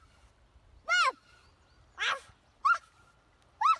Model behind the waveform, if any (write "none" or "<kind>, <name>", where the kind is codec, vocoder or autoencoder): none